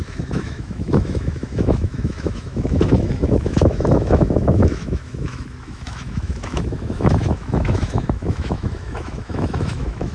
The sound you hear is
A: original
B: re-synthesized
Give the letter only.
B